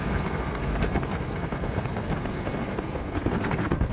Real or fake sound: fake